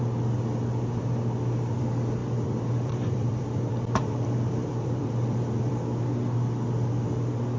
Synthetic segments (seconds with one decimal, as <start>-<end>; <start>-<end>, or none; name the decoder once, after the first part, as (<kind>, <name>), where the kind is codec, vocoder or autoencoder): 2.2-5.7 (vocoder, BigVGAN v2)